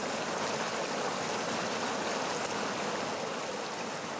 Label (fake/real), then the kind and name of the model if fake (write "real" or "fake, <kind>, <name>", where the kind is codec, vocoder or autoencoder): real